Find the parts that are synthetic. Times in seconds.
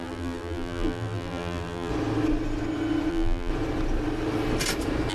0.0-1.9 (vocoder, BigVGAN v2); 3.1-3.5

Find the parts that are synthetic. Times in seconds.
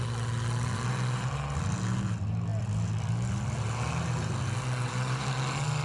none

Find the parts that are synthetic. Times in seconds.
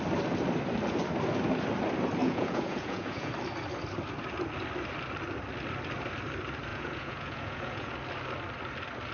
2.2-3.3 (vocoder, Vocos); 6.7-7.9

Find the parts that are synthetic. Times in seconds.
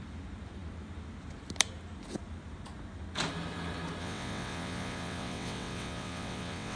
4.0-6.8 (vocoder, WaveNeXt)